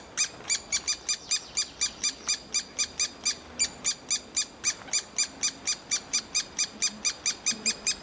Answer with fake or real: real